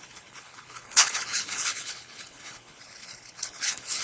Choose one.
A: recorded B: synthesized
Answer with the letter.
B